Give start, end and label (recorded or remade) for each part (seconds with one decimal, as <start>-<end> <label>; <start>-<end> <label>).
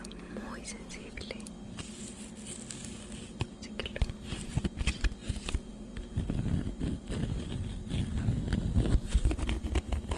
0.0-10.2 recorded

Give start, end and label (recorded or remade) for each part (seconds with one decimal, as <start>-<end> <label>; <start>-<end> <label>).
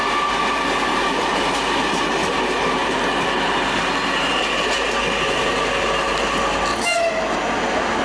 0.0-0.9 recorded; 0.9-2.0 remade; 2.0-8.0 recorded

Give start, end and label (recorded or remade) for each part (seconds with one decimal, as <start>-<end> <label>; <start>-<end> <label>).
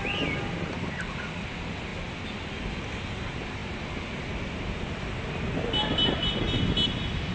0.0-7.3 recorded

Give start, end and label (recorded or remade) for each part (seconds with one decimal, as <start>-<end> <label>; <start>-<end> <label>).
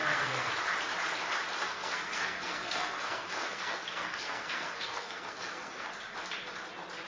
0.0-0.5 remade; 0.5-1.6 recorded; 1.6-5.9 remade; 5.9-7.1 recorded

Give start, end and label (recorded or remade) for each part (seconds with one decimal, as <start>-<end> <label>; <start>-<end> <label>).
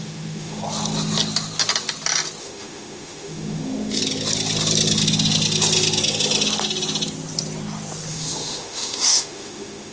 0.0-0.6 remade; 0.6-2.4 recorded; 2.4-4.0 remade; 4.0-8.1 recorded; 8.1-9.9 remade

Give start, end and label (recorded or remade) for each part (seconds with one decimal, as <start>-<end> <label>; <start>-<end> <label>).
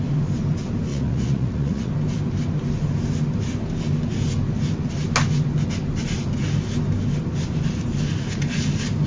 0.0-0.9 recorded; 0.9-1.9 remade; 1.9-9.1 recorded